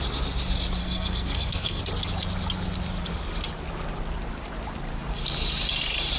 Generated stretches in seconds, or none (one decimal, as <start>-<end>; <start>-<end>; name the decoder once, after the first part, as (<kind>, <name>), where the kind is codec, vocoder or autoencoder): 0.8-1.8 (codec, SNAC)